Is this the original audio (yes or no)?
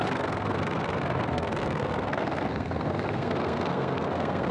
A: no